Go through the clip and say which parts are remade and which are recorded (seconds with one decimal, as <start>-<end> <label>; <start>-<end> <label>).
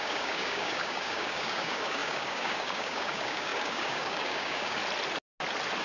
0.0-4.8 remade; 4.8-5.8 recorded